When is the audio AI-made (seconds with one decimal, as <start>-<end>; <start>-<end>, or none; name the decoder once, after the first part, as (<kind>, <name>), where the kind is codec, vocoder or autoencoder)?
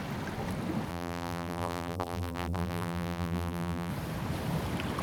0.9-3.9 (vocoder, BigVGAN v2)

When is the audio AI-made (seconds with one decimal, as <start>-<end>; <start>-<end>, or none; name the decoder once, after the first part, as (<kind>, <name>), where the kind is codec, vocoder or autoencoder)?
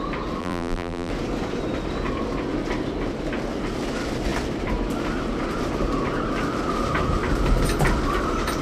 0.4-1.1 (vocoder, BigVGAN v2)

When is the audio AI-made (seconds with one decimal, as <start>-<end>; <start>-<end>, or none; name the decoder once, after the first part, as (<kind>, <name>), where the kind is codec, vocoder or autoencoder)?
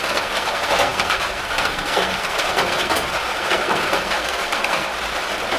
0.0-4.9 (codec, SNAC)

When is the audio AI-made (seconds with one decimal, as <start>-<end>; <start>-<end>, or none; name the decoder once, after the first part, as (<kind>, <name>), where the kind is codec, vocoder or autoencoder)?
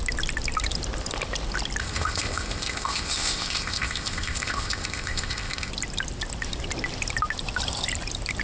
1.8-5.7 (codec, ZipCodec)